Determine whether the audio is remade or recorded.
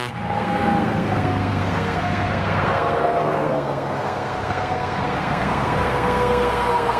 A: remade